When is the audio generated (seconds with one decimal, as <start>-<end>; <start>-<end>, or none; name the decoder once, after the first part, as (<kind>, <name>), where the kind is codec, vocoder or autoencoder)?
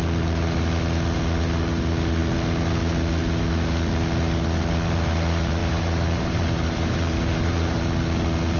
5.6-7.8 (vocoder, BigVGAN v2)